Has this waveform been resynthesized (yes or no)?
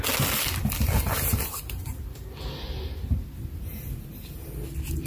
no